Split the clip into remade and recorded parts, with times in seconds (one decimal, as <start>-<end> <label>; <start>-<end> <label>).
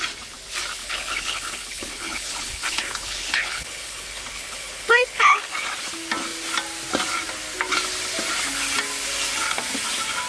0.0-0.8 recorded; 0.8-5.5 remade; 5.5-10.3 recorded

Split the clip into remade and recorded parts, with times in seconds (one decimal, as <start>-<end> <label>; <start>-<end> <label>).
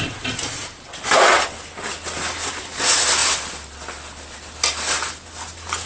0.0-5.9 recorded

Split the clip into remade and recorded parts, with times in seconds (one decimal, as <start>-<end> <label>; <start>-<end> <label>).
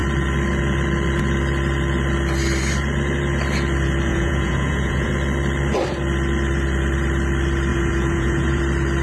0.0-4.1 recorded; 4.1-5.1 remade; 5.1-7.7 recorded; 7.7-8.6 remade; 8.6-9.0 recorded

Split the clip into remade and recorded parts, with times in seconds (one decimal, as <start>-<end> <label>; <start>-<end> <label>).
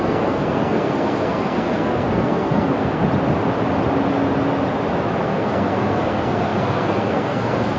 0.0-3.0 remade; 3.0-5.2 recorded; 5.2-7.8 remade